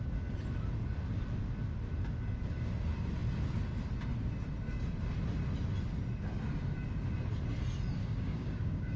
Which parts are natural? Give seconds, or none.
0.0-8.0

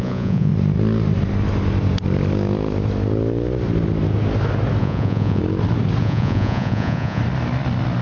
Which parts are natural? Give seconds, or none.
0.5-4.8; 5.4-6.0; 7.2-8.0